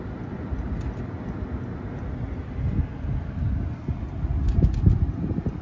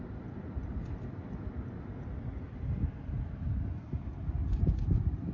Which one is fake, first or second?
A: second